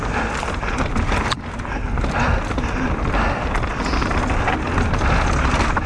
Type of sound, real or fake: real